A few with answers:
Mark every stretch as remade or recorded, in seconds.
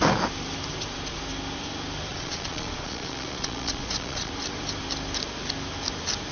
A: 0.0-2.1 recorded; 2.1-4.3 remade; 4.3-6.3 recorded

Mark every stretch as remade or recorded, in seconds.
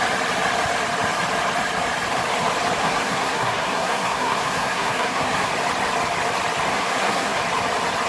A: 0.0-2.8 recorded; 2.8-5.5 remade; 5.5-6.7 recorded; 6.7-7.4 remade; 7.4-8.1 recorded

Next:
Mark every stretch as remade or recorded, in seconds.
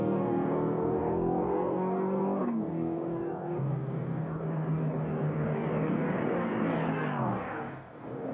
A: 0.0-8.3 remade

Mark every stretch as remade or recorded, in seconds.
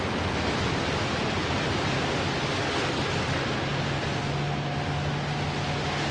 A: 0.0-1.4 recorded; 1.4-2.8 remade; 2.8-6.1 recorded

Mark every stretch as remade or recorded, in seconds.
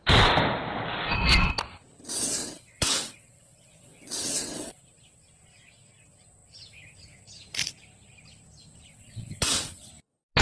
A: 0.0-2.4 recorded; 2.4-4.8 remade; 4.8-8.9 recorded; 8.9-9.9 remade; 9.9-10.4 recorded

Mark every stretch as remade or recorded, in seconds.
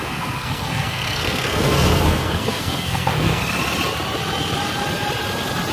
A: 0.0-3.4 remade; 3.4-5.7 recorded